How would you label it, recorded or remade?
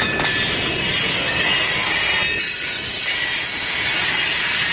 recorded